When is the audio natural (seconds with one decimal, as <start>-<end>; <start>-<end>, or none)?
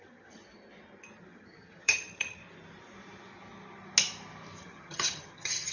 0.4-1.2; 2.4-4.6